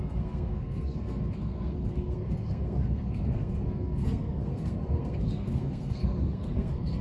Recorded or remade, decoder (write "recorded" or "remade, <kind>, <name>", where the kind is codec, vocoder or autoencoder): remade, codec, SNAC